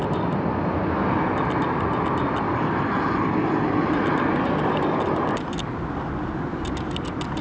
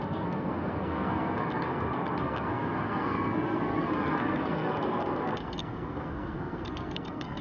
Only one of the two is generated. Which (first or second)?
second